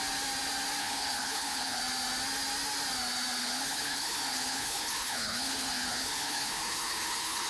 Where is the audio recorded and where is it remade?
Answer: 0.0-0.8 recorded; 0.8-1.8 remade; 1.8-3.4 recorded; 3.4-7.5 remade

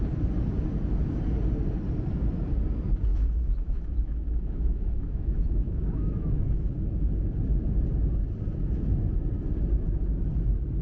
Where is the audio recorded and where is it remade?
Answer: 0.0-3.1 recorded; 3.1-6.4 remade; 6.4-10.8 recorded

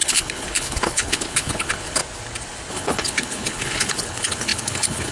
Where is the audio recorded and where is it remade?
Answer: 0.0-2.0 remade; 2.0-2.7 recorded; 2.7-5.1 remade